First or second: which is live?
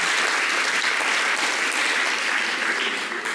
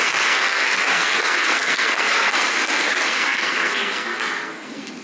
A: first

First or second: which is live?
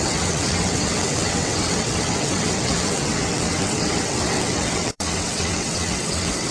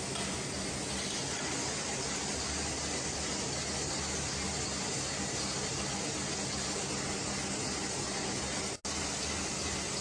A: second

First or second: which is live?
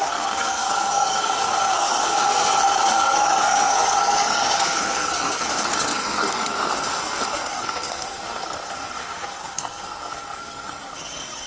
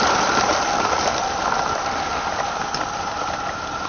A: second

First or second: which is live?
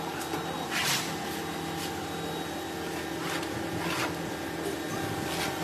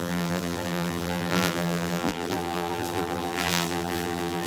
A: first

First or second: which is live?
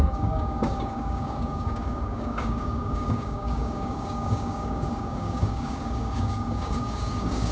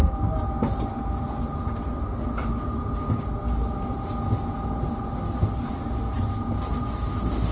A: second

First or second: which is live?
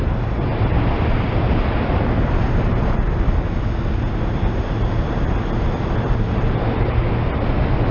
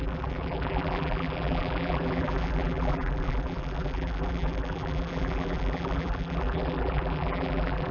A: first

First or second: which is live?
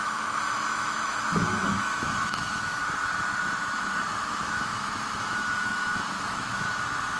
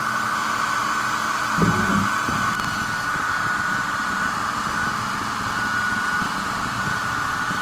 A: second